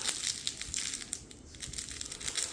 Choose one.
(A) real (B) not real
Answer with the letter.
A